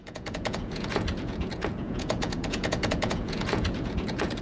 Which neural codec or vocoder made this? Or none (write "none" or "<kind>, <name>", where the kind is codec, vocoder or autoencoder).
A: vocoder, Vocos